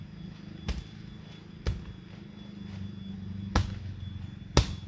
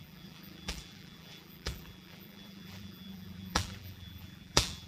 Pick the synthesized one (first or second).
second